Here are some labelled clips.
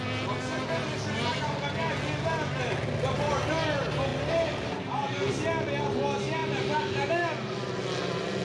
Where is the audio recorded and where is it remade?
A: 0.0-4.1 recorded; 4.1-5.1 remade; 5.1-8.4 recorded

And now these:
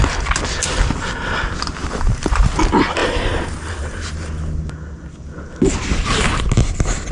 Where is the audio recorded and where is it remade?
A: 0.0-1.8 recorded; 1.8-2.6 remade; 2.6-3.0 recorded; 3.0-4.3 remade; 4.3-7.1 recorded

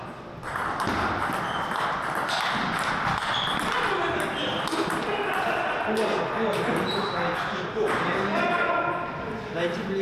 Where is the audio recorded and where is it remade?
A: 0.0-0.5 recorded; 0.5-1.4 remade; 1.4-10.0 recorded